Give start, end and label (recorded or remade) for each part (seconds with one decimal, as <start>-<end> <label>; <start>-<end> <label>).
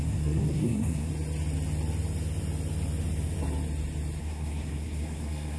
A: 0.0-1.1 remade; 1.1-4.2 recorded; 4.2-5.6 remade